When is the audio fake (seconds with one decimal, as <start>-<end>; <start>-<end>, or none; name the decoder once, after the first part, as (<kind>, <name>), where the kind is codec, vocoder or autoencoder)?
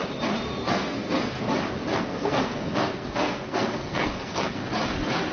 0.6-1.4 (codec, SNAC); 1.9-4.7